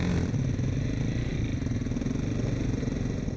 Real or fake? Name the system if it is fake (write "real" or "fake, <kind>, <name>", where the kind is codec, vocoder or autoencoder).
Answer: real